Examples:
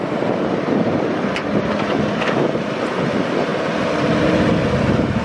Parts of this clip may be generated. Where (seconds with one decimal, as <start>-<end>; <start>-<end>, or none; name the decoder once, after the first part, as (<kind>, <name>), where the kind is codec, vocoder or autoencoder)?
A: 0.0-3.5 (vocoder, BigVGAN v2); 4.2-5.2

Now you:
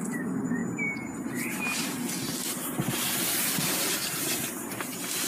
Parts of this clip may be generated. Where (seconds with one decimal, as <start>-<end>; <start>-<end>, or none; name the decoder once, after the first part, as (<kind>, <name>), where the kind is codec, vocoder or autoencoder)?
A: 0.0-0.6 (vocoder, BigVGAN v2); 3.8-5.3

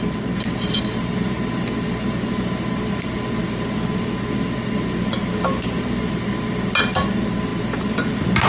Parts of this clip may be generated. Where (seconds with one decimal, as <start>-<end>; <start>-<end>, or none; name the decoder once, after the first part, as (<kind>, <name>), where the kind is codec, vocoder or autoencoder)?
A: 7.5-8.1 (vocoder, BigVGAN v2)

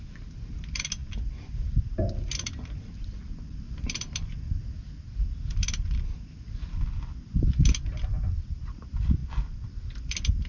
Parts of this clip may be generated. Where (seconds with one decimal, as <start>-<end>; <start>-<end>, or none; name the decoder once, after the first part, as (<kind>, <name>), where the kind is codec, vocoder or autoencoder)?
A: none

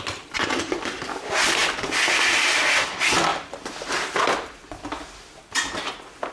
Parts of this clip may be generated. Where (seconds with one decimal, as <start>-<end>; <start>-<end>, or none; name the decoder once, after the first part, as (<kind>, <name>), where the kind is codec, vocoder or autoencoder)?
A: 3.3-4.2 (vocoder, BigVGAN v2)